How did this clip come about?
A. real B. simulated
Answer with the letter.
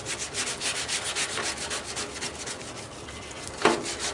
A